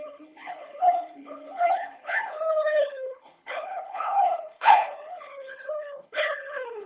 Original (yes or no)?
no